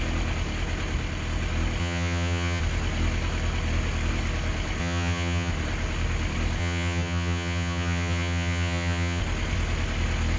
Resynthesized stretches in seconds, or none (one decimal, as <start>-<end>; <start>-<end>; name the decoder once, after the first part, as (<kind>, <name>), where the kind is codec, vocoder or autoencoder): 1.8-2.6 (vocoder, HiFi-GAN); 4.8-5.5; 6.6-9.2